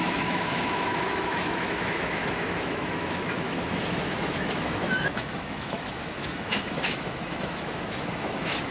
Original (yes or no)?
no